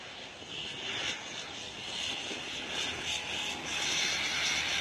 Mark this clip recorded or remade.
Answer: recorded